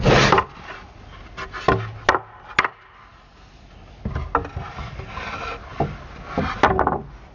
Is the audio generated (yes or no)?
no